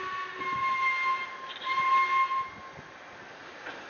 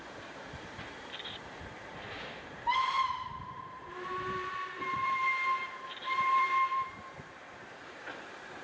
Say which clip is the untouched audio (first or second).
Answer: first